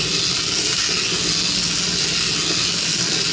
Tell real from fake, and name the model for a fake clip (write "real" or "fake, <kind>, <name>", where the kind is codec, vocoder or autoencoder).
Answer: real